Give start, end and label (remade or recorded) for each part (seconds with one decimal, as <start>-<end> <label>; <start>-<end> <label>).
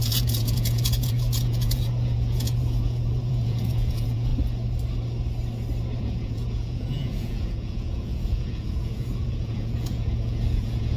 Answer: 0.0-4.3 remade; 4.3-6.0 recorded; 6.0-11.0 remade